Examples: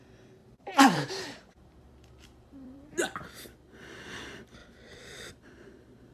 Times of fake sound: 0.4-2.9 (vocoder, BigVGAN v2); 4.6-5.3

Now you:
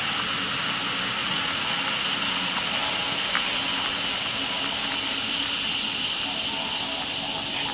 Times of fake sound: 1.2-1.8 (vocoder, Vocos)